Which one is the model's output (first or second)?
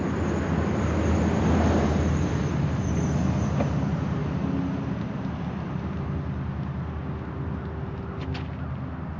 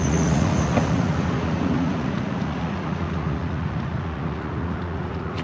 second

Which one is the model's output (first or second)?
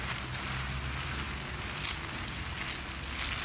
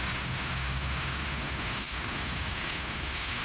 second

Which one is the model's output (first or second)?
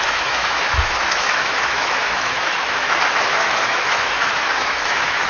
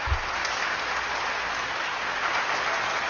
first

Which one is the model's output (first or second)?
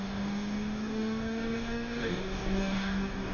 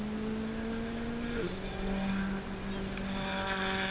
first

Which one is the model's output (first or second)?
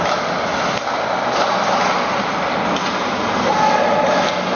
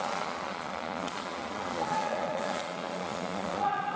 second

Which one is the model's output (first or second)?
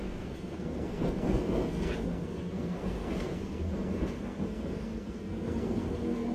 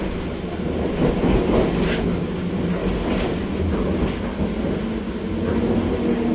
first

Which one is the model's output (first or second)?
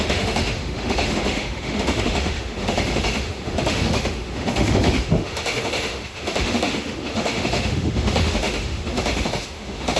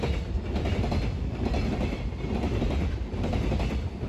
first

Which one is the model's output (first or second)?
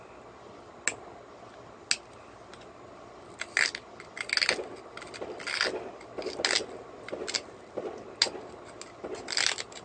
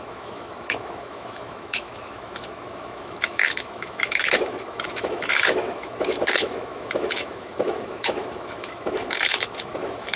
second